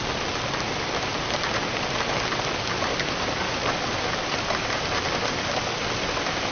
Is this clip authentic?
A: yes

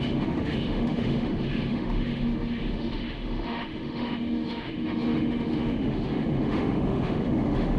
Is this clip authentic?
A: no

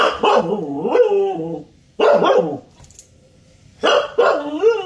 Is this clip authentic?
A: yes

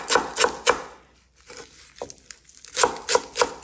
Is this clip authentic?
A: yes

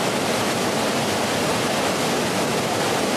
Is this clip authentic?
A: yes